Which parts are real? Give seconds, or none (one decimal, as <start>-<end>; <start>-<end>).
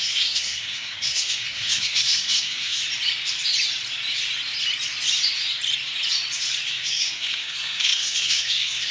2.8-6.7